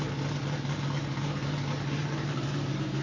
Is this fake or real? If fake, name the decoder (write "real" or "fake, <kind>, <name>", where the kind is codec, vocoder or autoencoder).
real